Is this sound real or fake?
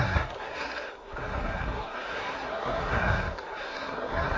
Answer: fake